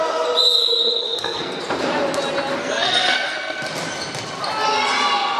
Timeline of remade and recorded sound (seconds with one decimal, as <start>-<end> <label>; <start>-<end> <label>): 0.0-0.6 recorded; 0.6-1.6 remade; 1.6-2.6 recorded; 2.6-3.6 remade; 3.6-5.4 recorded